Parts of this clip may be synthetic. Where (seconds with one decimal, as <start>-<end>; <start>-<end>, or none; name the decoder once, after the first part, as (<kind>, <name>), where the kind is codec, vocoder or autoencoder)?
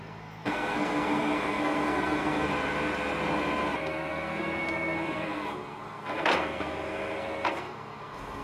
0.0-2.5 (codec, SNAC); 3.8-8.4